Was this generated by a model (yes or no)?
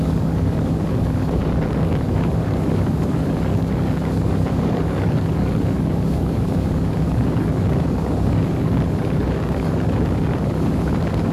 yes